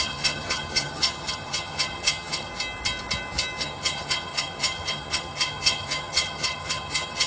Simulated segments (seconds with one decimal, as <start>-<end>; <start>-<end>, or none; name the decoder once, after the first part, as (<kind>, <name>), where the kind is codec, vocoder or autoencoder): 0.0-2.5 (vocoder, HiFi-GAN); 3.6-7.3